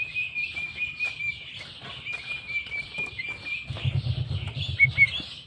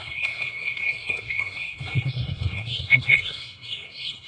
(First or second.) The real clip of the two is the first